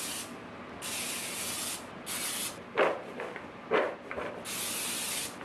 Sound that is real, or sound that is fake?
real